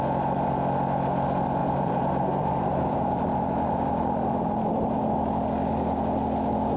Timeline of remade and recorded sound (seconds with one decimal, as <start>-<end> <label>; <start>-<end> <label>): 0.0-1.6 recorded; 1.6-4.9 remade; 4.9-6.8 recorded